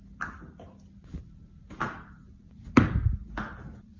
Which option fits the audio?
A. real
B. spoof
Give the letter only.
A